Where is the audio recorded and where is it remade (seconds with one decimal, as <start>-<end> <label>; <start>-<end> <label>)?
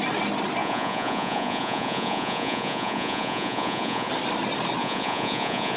0.0-0.6 recorded; 0.6-4.1 remade; 4.1-4.8 recorded; 4.8-5.8 remade